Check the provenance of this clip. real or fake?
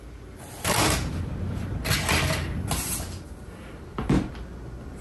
real